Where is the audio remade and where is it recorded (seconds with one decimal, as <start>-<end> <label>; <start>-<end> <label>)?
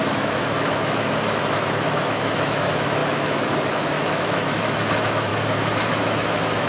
0.0-5.3 remade; 5.3-5.9 recorded; 5.9-6.7 remade